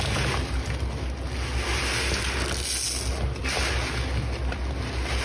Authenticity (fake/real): real